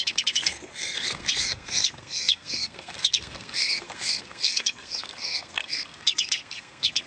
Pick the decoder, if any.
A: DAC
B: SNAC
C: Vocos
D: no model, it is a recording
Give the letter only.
B